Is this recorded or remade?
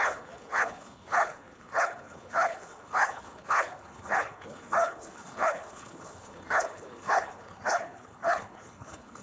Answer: remade